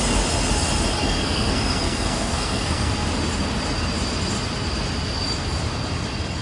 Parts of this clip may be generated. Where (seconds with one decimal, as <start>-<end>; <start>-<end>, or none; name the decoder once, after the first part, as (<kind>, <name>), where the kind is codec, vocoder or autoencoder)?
1.0-2.9 (codec, SNAC)